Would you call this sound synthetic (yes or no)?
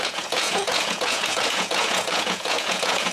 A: yes